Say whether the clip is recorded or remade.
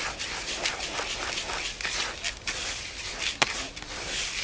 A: recorded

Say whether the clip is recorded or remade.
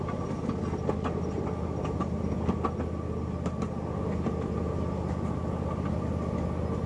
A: recorded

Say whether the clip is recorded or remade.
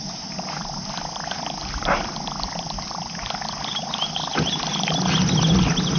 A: recorded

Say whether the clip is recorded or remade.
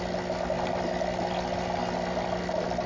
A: recorded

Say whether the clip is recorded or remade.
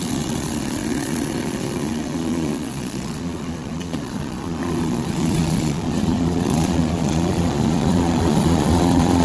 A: remade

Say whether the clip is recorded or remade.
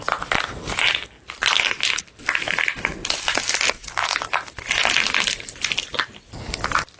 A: recorded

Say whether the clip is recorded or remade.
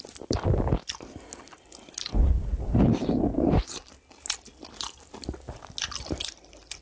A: recorded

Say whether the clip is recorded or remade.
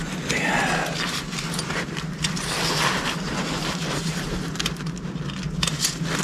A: recorded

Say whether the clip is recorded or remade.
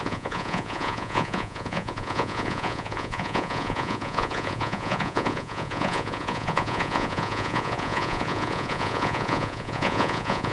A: remade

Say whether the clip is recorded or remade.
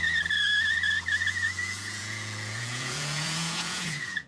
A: remade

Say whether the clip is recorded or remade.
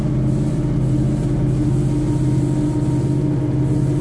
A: recorded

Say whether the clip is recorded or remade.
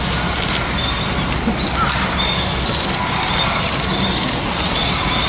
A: recorded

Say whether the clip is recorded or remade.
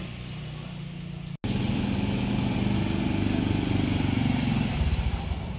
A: recorded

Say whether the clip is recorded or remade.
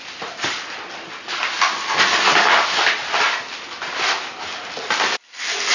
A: recorded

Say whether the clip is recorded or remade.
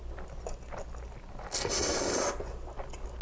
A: recorded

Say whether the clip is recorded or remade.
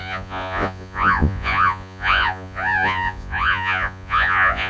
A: remade